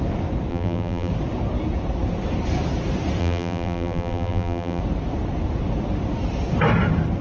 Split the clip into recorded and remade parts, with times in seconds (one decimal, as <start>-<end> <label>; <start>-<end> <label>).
0.0-0.5 recorded; 0.5-1.1 remade; 1.1-3.2 recorded; 3.2-4.8 remade; 4.8-7.2 recorded